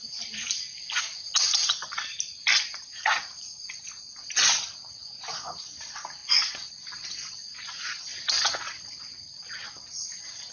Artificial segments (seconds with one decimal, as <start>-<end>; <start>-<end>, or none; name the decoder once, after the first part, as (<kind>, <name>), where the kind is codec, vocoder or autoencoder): 2.9-3.9 (vocoder, Vocos)